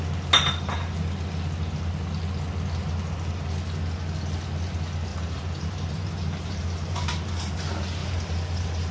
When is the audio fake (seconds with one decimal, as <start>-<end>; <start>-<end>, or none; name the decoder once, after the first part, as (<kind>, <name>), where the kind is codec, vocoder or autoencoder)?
5.1-7.5 (vocoder, BigVGAN v2); 8.0-8.9